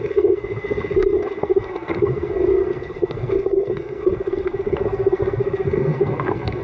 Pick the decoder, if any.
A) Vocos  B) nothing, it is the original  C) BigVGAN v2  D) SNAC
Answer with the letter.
D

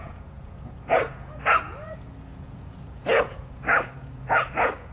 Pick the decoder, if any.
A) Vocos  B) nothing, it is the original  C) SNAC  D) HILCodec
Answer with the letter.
A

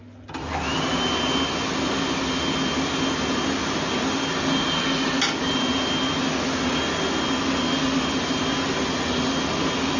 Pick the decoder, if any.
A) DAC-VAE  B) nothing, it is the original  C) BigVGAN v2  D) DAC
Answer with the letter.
B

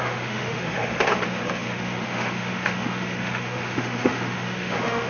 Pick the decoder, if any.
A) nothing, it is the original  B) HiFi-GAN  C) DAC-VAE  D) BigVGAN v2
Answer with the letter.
C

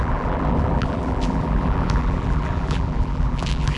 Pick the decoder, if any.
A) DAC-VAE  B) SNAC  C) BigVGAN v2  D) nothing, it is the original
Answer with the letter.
C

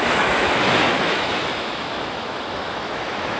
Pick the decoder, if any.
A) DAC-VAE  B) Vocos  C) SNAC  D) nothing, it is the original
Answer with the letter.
A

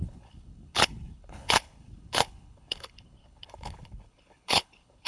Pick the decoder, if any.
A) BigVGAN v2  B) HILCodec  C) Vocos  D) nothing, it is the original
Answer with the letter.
B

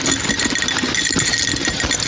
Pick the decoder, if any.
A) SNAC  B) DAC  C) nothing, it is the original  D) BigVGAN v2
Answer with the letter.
C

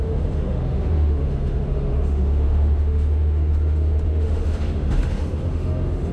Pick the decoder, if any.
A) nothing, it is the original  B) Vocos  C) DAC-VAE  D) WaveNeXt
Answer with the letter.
C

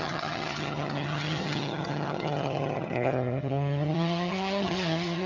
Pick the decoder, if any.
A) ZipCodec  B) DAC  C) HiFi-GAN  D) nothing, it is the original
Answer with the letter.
C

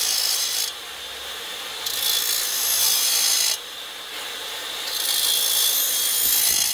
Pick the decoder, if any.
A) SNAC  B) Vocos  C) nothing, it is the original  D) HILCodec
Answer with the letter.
C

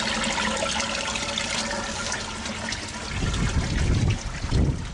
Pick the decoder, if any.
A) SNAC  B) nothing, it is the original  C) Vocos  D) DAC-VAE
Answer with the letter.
B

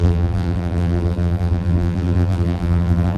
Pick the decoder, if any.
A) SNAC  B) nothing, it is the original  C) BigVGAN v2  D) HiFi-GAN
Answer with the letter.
C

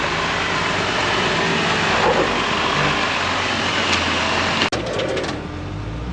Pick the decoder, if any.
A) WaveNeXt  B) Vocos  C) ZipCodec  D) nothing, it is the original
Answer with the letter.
D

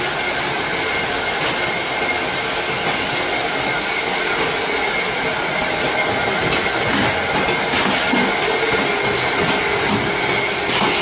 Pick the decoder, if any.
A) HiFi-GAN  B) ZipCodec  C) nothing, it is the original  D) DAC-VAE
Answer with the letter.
C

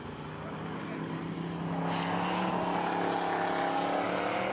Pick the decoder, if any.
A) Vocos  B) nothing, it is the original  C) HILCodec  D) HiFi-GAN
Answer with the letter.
B